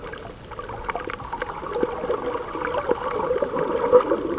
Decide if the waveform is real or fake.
real